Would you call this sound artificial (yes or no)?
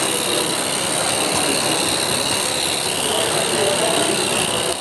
no